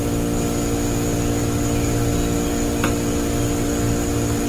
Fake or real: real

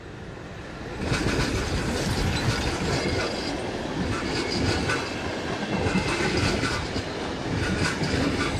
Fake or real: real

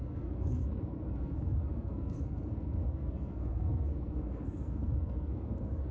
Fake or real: fake